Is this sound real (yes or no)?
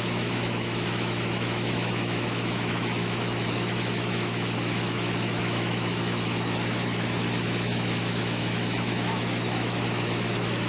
no